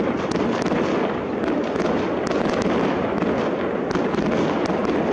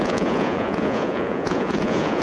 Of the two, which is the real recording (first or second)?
first